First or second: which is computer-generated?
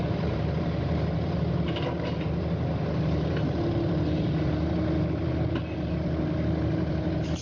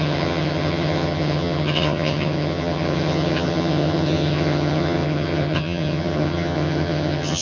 second